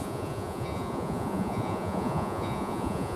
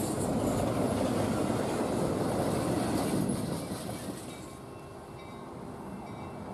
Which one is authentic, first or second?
second